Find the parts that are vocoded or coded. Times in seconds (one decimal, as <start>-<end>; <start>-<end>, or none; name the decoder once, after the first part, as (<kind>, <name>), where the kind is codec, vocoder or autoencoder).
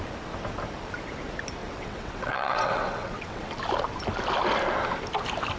1.6-3.5 (vocoder, WaveNeXt)